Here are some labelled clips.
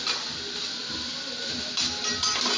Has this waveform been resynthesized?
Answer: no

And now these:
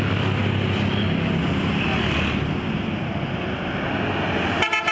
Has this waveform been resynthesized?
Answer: no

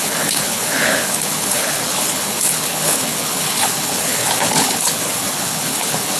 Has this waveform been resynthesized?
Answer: yes